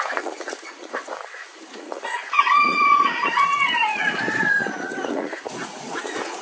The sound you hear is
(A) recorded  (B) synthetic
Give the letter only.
B